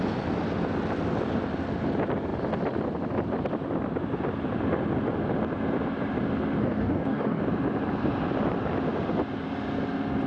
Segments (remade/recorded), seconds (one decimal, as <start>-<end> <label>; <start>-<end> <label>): 0.0-6.6 recorded; 6.6-7.4 remade; 7.4-10.3 recorded